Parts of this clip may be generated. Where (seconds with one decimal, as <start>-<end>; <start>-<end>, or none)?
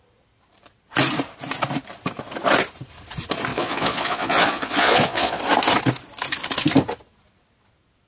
3.5-5.4